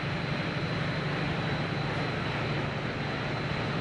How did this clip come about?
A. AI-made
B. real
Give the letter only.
B